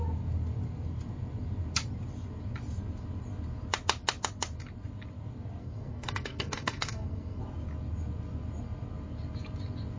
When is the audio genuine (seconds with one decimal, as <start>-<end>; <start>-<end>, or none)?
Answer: 0.0-5.6; 7.4-10.0